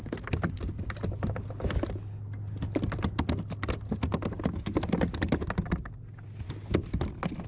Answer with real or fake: real